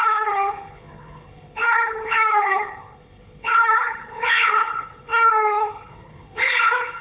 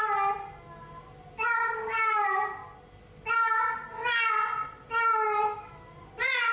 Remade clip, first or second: first